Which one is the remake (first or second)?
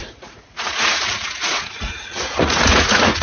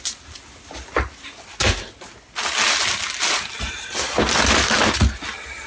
first